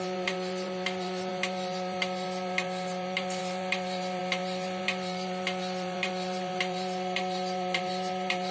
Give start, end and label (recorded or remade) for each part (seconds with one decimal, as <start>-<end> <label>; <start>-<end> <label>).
0.0-8.5 remade